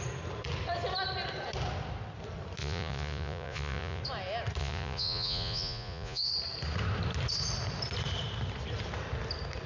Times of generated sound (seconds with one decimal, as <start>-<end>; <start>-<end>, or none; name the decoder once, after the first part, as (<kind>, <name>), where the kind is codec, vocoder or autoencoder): 2.6-4.0 (vocoder, Vocos); 4.6-6.3